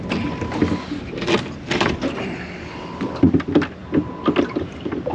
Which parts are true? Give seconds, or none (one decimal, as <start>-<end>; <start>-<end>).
0.0-5.1